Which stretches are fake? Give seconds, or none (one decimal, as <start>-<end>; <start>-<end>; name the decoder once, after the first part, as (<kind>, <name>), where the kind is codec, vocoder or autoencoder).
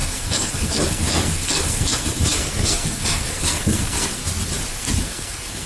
0.0-4.2 (codec, SNAC); 4.7-5.7